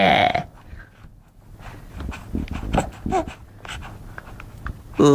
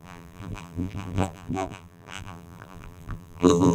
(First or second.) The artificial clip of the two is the second